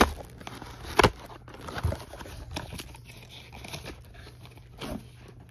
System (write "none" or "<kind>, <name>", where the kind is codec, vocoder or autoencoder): none